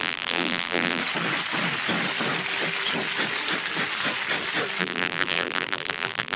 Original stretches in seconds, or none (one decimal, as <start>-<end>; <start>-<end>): 1.0-4.8